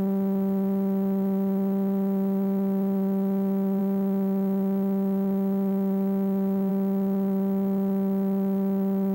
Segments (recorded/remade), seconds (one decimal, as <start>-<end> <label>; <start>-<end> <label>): 0.0-9.1 recorded